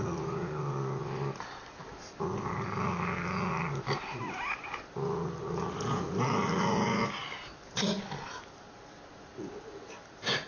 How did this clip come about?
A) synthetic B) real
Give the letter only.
B